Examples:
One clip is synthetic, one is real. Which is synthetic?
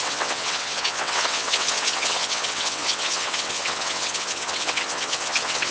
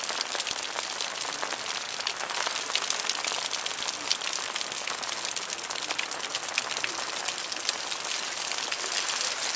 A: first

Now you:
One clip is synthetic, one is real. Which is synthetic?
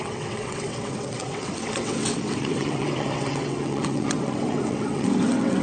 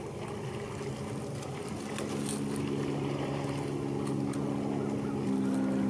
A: first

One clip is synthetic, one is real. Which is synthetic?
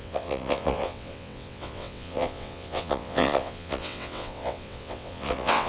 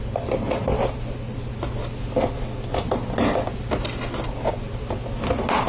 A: first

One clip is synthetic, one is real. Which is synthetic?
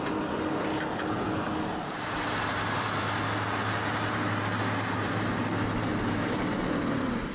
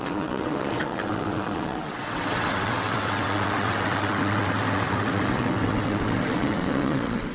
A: second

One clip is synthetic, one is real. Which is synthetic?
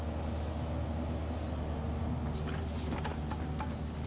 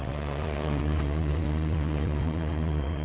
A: second